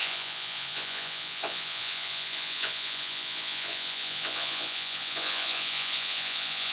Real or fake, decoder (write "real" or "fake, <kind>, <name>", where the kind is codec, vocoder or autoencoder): fake, vocoder, Vocos